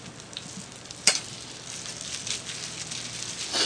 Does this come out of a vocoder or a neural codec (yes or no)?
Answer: no